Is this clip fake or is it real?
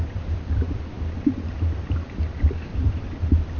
fake